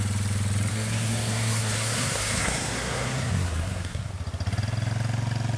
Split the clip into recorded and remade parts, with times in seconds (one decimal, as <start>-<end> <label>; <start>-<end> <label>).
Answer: 0.0-0.7 recorded; 0.7-4.1 remade; 4.1-5.6 recorded